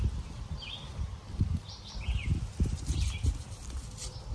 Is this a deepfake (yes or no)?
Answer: no